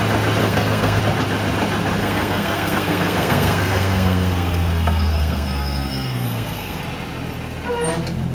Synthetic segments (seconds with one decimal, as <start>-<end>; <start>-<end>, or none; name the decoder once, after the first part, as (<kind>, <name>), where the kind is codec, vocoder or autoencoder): 0.4-1.0 (codec, SNAC); 2.0-6.8